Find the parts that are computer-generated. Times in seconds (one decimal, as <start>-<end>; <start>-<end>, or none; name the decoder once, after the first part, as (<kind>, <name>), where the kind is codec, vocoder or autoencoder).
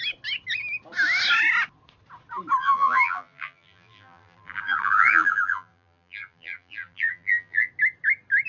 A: 2.6-7.7 (vocoder, BigVGAN v2)